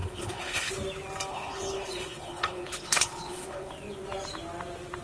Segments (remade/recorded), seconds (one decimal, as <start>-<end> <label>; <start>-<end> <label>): 0.0-0.7 remade; 0.7-1.3 recorded; 1.3-3.7 remade; 3.7-5.0 recorded

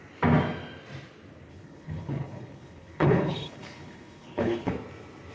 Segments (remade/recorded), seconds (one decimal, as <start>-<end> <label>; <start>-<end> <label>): 0.0-1.5 recorded; 1.5-4.7 remade; 4.7-5.3 recorded

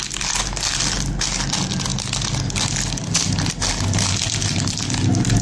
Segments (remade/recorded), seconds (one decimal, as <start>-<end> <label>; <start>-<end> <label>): 0.0-5.4 recorded

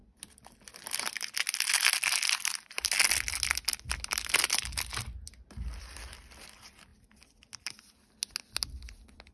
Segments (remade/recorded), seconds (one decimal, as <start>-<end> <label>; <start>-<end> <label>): 0.0-9.3 recorded